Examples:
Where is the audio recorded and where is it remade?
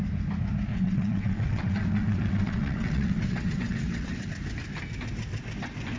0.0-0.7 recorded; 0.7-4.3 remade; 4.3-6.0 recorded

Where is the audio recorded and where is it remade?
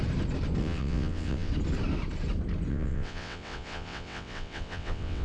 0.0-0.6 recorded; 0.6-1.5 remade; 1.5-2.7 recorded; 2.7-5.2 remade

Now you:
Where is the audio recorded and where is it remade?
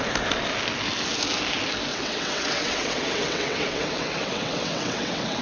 0.0-1.9 recorded; 1.9-5.4 remade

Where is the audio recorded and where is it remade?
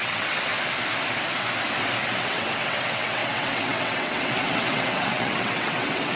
0.0-0.5 remade; 0.5-2.2 recorded; 2.2-6.2 remade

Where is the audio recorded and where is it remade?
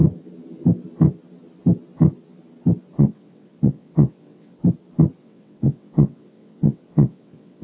0.0-3.0 recorded; 3.0-4.6 remade; 4.6-5.2 recorded; 5.2-7.6 remade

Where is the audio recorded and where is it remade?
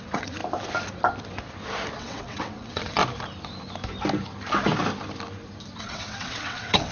0.0-0.4 remade; 0.4-2.0 recorded; 2.0-3.0 remade; 3.0-5.8 recorded; 5.8-6.9 remade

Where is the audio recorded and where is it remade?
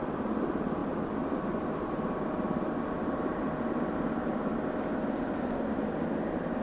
0.0-6.6 recorded